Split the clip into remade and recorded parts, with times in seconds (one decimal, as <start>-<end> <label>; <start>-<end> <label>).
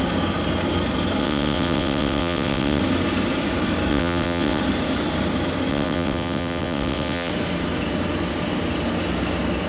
0.0-1.2 recorded; 1.2-2.8 remade; 2.8-3.9 recorded; 3.9-4.6 remade; 4.6-5.7 recorded; 5.7-7.3 remade; 7.3-9.7 recorded